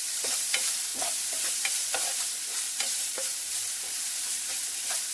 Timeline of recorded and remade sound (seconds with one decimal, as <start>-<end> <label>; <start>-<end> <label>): 0.0-0.9 remade; 0.9-1.5 recorded; 1.5-5.1 remade